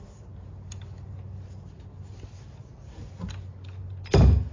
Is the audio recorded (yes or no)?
yes